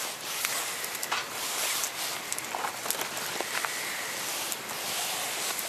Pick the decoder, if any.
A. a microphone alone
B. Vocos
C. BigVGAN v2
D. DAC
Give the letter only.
A